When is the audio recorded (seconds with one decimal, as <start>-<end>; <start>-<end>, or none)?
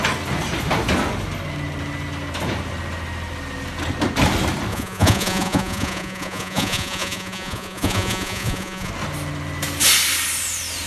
0.0-4.7; 8.9-10.9